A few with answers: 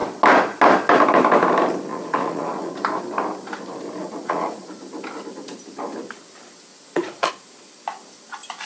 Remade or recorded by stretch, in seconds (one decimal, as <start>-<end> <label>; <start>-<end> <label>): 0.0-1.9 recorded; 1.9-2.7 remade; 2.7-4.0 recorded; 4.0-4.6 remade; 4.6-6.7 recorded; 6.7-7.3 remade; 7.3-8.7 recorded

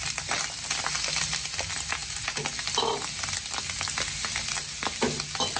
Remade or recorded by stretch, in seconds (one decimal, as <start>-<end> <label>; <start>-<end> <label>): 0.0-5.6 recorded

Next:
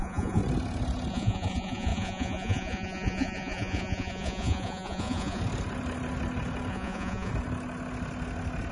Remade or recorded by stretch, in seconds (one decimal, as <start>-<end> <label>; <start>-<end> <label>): 0.0-0.4 remade; 0.4-1.1 recorded; 1.1-5.4 remade; 5.4-6.7 recorded; 6.7-7.3 remade; 7.3-8.7 recorded

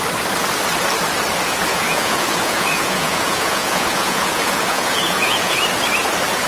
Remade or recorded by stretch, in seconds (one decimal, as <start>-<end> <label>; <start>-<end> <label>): 0.0-1.7 recorded; 1.7-5.6 remade; 5.6-6.5 recorded

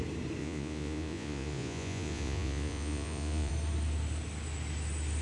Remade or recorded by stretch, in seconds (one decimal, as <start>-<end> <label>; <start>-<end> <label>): 0.0-0.4 recorded; 0.4-3.5 remade; 3.5-5.2 recorded

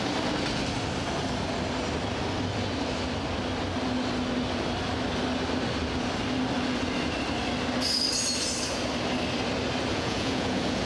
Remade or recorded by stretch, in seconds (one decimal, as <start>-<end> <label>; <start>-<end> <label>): 0.0-9.9 recorded; 9.9-10.9 remade

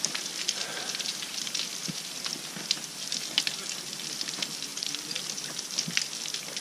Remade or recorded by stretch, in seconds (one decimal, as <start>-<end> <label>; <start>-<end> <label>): 0.0-6.6 recorded

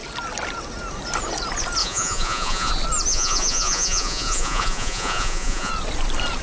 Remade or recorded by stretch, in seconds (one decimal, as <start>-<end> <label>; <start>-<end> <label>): 0.0-1.8 recorded; 1.8-2.7 remade; 2.7-3.1 recorded; 3.1-5.7 remade; 5.7-6.4 recorded